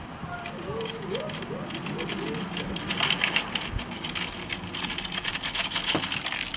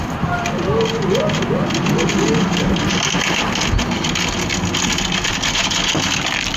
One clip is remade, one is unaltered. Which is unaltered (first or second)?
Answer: second